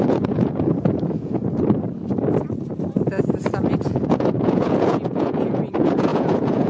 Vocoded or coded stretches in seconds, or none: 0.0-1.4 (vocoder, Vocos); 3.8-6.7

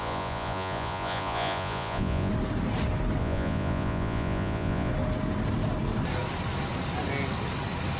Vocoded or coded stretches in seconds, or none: 0.0-2.3 (vocoder, Vocos); 3.2-4.9